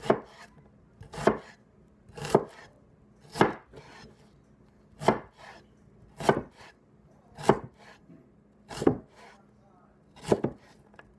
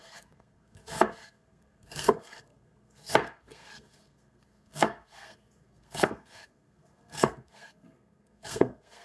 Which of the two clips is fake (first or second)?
second